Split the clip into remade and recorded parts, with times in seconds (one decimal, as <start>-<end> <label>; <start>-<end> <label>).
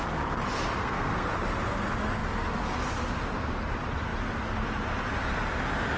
0.0-0.8 recorded; 0.8-1.3 remade; 1.3-6.0 recorded